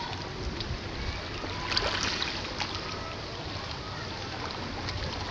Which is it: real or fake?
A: real